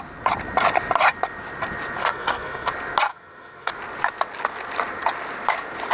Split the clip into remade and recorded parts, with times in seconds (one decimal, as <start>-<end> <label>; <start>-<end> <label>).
0.0-2.0 recorded; 2.0-2.7 remade; 2.7-3.1 recorded; 3.1-3.7 remade; 3.7-5.9 recorded